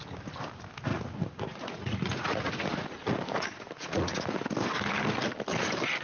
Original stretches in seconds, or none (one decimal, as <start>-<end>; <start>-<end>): 0.0-0.9; 4.5-6.0